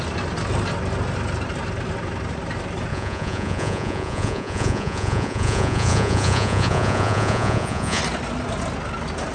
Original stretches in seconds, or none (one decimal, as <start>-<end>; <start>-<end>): 0.0-2.9; 8.0-9.3